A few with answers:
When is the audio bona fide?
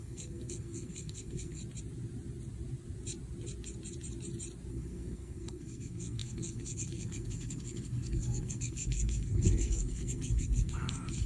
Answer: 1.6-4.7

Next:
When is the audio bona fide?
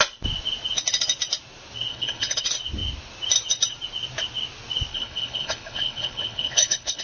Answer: 0.0-1.9; 2.4-4.9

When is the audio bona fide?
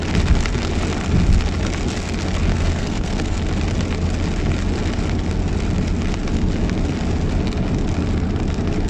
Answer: 0.0-2.5; 3.4-8.9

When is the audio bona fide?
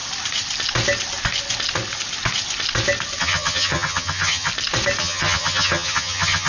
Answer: 0.0-3.2; 4.5-5.0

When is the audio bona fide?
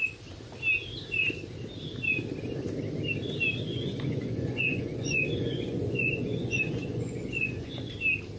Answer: 0.0-3.7; 7.9-8.4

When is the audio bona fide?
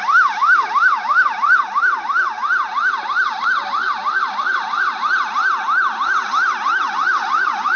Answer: 0.0-7.8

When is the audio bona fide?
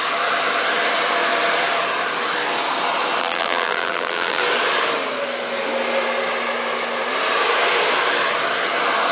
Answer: 0.0-3.2; 4.4-9.1